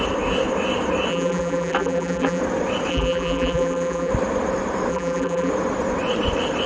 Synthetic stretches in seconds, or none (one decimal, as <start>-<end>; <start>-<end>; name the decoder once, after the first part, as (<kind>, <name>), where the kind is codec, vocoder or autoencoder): 1.1-2.4 (vocoder, BigVGAN v2); 2.9-4.1; 4.9-5.5